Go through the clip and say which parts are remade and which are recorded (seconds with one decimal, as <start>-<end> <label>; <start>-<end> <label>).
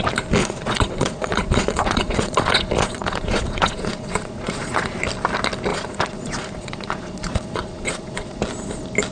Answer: 0.0-0.4 recorded; 0.4-5.0 remade; 5.0-5.7 recorded; 5.7-8.4 remade; 8.4-9.1 recorded